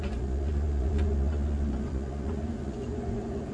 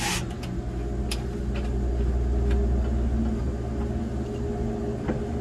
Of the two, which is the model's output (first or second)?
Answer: first